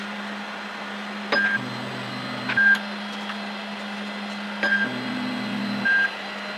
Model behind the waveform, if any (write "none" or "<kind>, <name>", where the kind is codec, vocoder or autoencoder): none